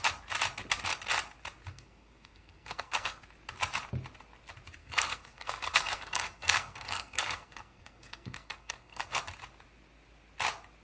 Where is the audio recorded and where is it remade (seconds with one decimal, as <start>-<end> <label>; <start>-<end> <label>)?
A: 0.0-1.7 recorded; 1.7-3.2 remade; 3.2-4.8 recorded; 4.8-9.2 remade; 9.2-10.8 recorded